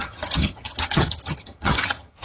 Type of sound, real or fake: fake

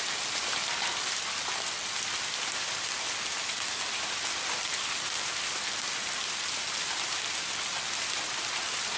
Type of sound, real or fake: real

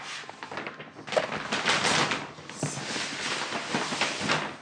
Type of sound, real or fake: real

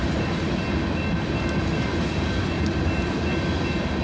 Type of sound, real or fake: real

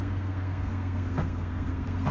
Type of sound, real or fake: fake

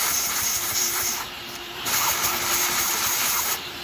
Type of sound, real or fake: fake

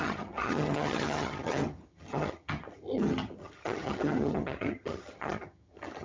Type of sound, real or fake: fake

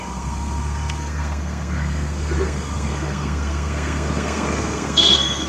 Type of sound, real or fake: fake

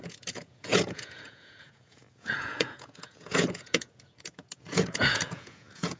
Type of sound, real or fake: fake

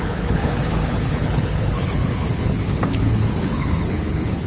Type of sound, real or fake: fake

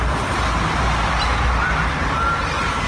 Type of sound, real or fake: fake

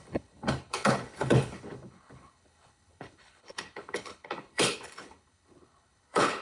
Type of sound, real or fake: fake